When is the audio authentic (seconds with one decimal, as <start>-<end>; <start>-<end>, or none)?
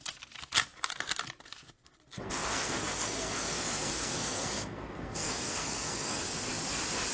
0.0-2.1; 6.2-7.1